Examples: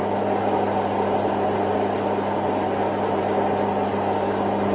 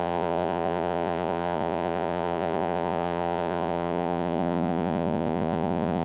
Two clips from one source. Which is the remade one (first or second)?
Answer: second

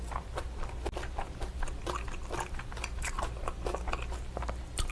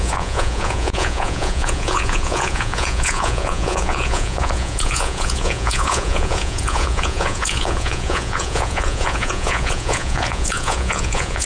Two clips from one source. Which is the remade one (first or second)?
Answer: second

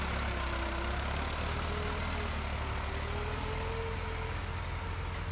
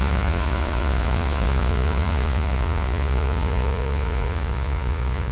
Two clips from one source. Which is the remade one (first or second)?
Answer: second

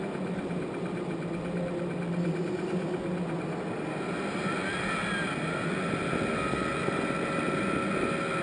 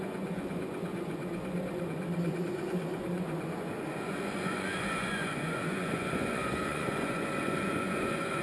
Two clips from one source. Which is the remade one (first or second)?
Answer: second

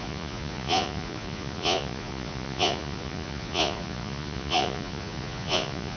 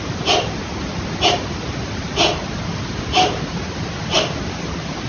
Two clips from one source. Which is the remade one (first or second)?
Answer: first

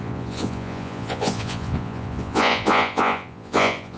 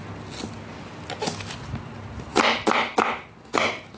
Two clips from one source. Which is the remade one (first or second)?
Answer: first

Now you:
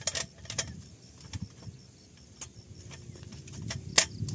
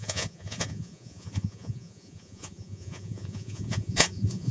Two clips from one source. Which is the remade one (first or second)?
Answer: second